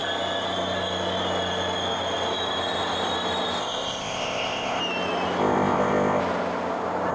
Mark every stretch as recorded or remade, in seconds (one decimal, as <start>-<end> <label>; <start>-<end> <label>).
0.0-3.6 recorded; 3.6-4.8 remade; 4.8-5.4 recorded; 5.4-6.2 remade; 6.2-7.1 recorded